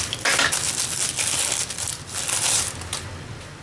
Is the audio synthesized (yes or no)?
no